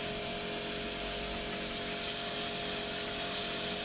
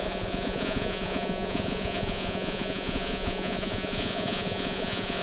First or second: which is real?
first